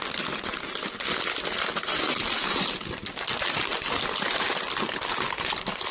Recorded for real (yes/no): yes